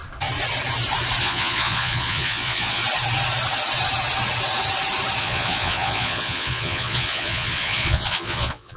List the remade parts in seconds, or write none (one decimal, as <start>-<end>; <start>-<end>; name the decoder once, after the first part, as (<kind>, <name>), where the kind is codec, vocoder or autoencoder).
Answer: 1.2-2.8 (vocoder, Vocos); 5.2-8.8